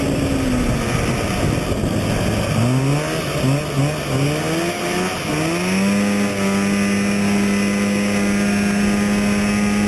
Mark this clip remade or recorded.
recorded